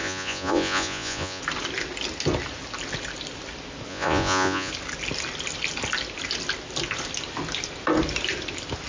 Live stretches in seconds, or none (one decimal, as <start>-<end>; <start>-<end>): 1.4-3.9; 4.7-8.9

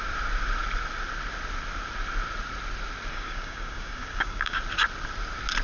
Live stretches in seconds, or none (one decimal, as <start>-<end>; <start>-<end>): 0.0-3.1; 4.6-5.6

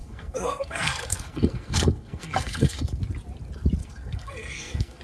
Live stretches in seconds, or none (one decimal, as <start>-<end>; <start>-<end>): 3.0-3.8

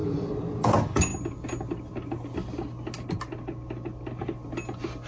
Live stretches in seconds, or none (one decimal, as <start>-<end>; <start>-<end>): 0.0-5.1

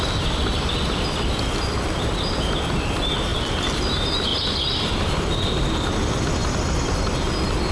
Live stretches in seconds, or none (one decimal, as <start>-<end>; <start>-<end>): 0.0-3.3; 3.8-4.3; 5.3-6.4; 7.0-7.7

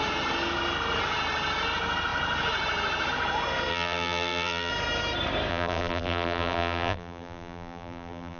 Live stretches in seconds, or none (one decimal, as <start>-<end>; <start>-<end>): 0.0-3.7; 4.7-5.5

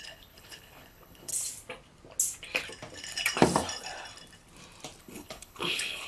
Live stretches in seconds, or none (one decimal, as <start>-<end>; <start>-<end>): 1.3-5.0

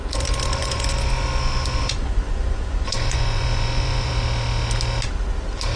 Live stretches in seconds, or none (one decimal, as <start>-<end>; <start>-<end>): 0.0-0.6; 4.1-5.8